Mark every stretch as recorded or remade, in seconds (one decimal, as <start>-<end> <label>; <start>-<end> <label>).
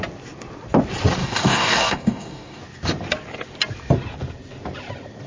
0.0-1.2 recorded; 1.2-2.6 remade; 2.6-5.3 recorded